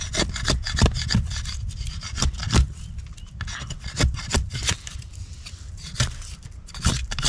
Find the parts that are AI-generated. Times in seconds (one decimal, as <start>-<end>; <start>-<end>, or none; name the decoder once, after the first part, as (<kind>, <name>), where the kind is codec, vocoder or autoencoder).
none